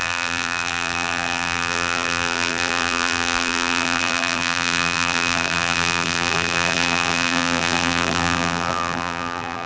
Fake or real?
fake